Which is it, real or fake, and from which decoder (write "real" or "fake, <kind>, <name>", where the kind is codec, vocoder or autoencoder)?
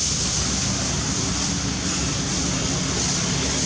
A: real